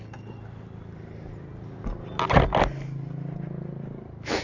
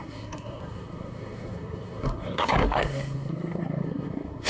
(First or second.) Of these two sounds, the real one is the first